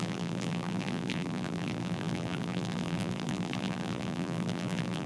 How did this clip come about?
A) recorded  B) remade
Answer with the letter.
B